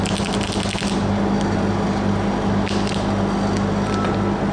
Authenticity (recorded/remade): recorded